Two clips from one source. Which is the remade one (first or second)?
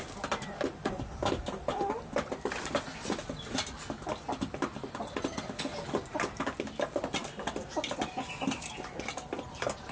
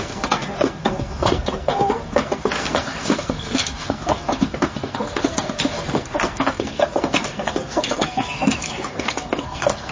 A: second